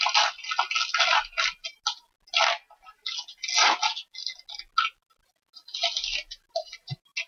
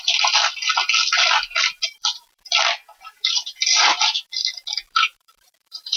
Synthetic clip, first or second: second